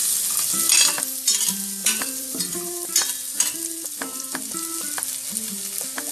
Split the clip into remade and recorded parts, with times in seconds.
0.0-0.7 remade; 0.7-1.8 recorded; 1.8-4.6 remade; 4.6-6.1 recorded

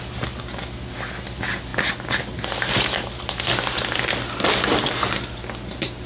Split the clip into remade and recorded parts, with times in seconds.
0.0-6.1 recorded